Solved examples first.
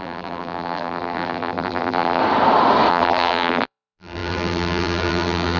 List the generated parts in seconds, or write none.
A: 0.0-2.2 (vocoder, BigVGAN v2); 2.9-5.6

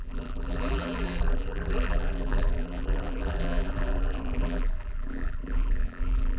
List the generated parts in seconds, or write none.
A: 0.0-6.4 (vocoder, BigVGAN v2)

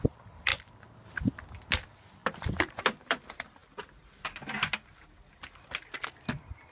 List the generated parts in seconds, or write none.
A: 2.2-2.8 (vocoder, BigVGAN v2)

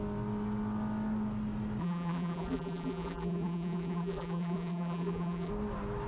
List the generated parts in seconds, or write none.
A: 1.8-5.5 (vocoder, BigVGAN v2)

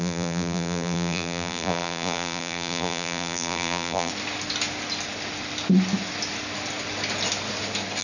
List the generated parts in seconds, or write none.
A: 0.0-4.1 (vocoder, BigVGAN v2)

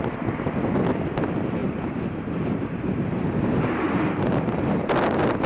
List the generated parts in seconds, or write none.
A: 1.6-4.9 (vocoder, BigVGAN v2)